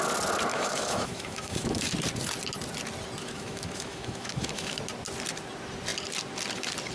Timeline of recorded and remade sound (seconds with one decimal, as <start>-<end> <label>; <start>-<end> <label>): 0.0-0.5 recorded; 0.5-1.9 remade; 1.9-3.2 recorded; 3.2-4.8 remade; 4.8-6.9 recorded